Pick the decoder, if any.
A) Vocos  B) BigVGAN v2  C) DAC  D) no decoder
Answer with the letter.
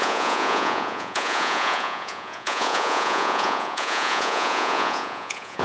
A